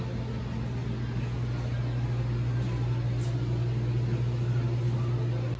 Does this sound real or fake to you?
real